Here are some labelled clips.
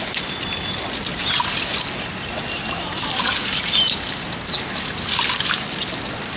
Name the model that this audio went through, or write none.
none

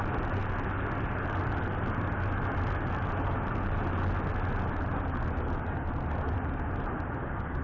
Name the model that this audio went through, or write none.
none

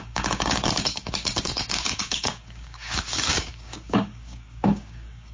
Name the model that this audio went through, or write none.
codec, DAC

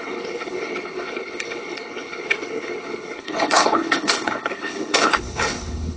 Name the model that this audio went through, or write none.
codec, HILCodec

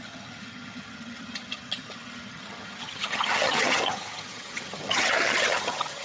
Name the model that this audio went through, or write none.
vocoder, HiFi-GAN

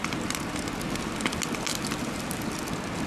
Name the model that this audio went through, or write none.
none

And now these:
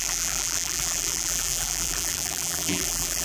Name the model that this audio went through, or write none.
vocoder, BigVGAN v2